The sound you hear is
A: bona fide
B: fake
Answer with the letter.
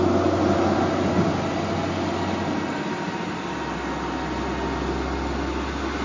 A